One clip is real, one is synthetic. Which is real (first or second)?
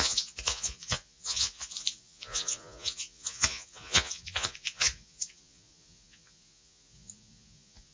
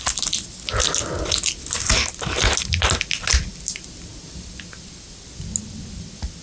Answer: second